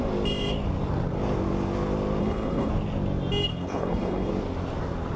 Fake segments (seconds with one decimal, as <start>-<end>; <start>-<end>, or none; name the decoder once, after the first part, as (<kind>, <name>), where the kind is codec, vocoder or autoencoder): 2.2-2.7 (codec, HILCodec); 3.5-4.3